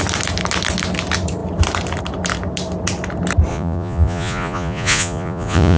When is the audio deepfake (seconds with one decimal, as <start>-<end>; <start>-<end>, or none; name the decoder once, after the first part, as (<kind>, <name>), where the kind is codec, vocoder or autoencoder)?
3.5-5.8 (vocoder, Vocos)